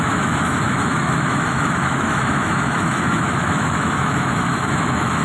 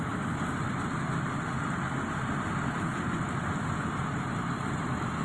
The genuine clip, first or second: second